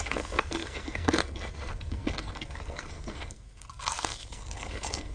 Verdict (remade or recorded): remade